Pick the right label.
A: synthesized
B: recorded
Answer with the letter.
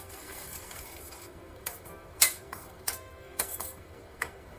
A